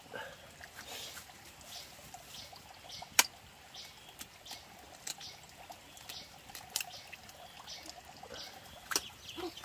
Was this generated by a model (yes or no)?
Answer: no